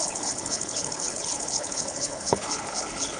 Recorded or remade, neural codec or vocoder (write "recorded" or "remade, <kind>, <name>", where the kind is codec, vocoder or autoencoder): remade, codec, HILCodec